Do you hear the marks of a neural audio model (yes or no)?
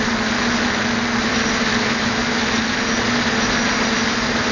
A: no